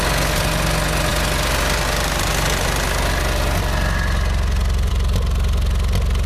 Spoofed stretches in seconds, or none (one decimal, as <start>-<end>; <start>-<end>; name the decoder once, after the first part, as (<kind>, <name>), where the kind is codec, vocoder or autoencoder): none